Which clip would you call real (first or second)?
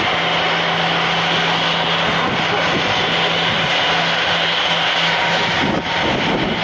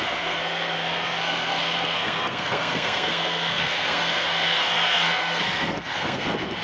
first